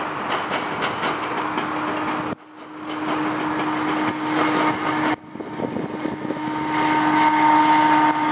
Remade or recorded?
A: recorded